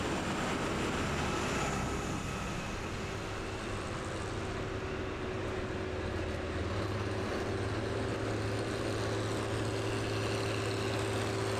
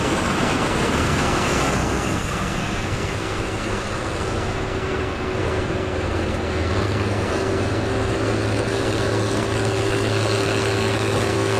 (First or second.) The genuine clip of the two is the first